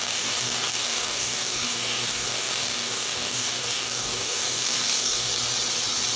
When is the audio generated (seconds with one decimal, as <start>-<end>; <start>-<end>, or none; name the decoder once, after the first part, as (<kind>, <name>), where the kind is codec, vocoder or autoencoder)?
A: 0.0-5.3 (codec, DAC)

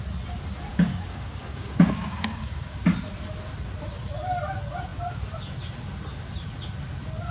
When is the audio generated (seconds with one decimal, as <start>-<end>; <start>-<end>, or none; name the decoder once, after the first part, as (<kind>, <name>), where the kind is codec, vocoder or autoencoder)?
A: 0.7-2.8 (codec, DAC)